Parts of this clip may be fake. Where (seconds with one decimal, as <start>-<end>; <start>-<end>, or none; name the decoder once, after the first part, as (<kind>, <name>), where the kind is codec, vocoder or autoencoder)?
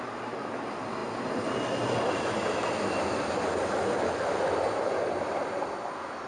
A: none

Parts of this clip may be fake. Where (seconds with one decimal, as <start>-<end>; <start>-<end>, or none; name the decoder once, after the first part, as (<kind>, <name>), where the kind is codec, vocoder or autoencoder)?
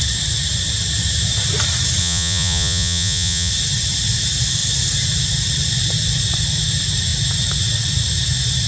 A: 2.0-3.5 (vocoder, Vocos)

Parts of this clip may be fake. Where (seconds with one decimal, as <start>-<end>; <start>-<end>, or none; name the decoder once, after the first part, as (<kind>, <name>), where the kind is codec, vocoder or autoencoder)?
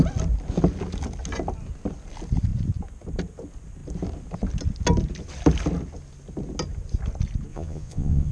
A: 7.5-8.3 (vocoder, Vocos)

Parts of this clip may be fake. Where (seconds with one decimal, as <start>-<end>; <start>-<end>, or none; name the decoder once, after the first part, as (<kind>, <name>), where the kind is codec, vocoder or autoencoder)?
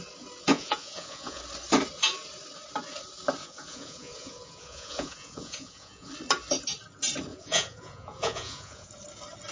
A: 0.5-1.4 (vocoder, Vocos); 3.4-6.1; 7.3-8.9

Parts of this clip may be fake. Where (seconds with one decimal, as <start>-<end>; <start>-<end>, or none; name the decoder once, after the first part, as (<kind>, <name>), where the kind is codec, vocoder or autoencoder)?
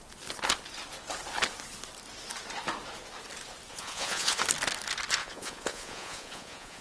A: 3.7-4.4 (vocoder, Vocos); 5.2-6.8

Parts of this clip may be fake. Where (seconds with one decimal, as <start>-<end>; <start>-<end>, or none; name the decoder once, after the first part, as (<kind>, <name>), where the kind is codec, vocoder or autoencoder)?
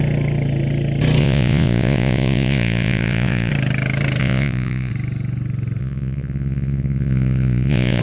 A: 1.2-3.5 (vocoder, Vocos); 4.2-4.9; 5.8-8.0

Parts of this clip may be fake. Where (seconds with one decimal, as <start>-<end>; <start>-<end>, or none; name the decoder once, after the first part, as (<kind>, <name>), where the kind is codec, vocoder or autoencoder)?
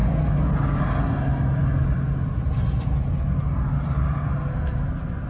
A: none